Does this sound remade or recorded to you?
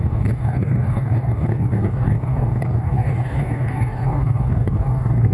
remade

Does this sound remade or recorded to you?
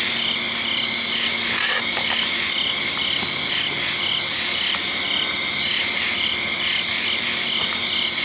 recorded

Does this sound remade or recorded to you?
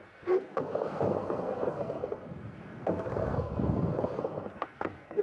remade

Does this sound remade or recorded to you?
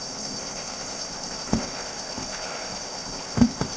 remade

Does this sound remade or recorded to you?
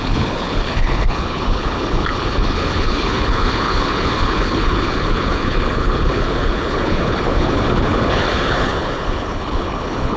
remade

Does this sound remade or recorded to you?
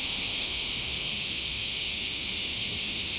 remade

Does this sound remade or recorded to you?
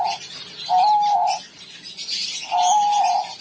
recorded